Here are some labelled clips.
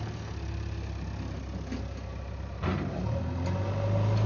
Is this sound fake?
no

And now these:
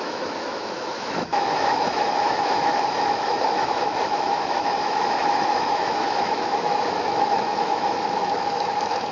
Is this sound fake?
yes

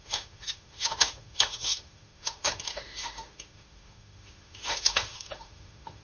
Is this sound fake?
yes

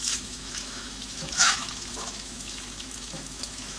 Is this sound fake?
yes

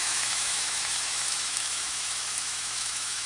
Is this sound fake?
yes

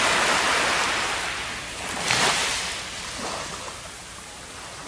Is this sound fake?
no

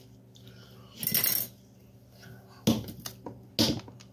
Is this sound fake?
no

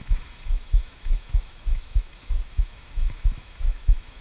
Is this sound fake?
yes